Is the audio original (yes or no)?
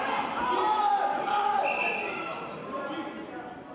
yes